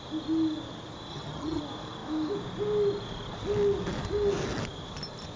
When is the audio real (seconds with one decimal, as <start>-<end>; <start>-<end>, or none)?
0.0-1.1; 1.6-5.4